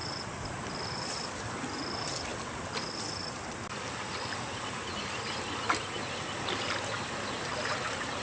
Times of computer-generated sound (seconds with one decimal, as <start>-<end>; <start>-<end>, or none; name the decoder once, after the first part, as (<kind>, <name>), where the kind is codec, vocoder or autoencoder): none

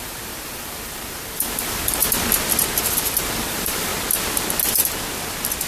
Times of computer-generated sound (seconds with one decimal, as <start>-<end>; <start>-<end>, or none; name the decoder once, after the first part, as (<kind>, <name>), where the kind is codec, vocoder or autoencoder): 0.0-2.0 (vocoder, BigVGAN v2); 3.5-3.9